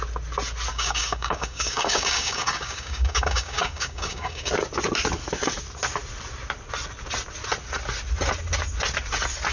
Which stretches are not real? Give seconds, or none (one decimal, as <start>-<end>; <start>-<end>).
0.7-4.5